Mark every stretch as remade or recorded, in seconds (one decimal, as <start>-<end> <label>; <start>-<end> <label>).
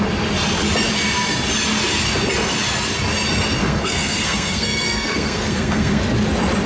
0.0-3.6 recorded; 3.6-6.0 remade; 6.0-6.7 recorded